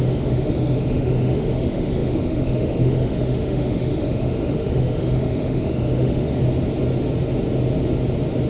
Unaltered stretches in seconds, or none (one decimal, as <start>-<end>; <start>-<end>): 6.4-8.5